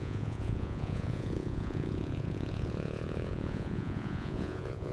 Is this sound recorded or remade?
remade